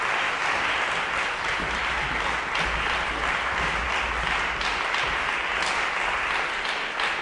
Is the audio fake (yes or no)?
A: no